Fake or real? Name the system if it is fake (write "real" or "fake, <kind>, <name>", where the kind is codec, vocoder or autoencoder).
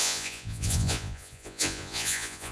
fake, vocoder, Vocos